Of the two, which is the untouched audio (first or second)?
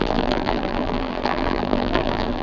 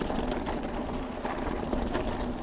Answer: second